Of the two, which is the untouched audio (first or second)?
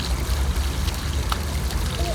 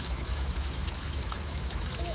first